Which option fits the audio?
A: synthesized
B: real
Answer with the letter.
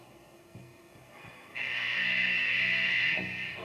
A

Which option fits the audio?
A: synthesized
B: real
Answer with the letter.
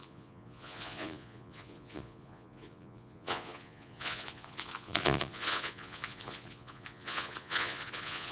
A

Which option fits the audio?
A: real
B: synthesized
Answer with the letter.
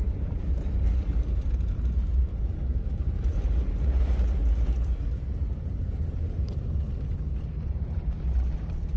B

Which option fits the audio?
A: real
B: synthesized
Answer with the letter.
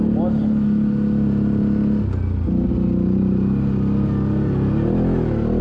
A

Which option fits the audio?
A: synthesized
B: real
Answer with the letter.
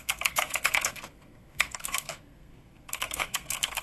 A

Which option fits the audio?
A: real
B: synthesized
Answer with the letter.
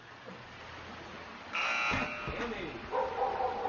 A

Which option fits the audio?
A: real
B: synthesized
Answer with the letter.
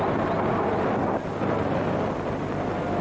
A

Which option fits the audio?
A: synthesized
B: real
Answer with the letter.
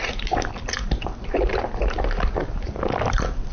B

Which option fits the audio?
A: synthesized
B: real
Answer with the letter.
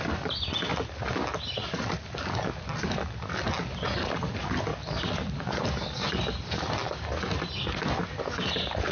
B